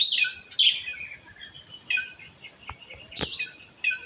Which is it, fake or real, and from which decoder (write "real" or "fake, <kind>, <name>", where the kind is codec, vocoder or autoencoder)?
real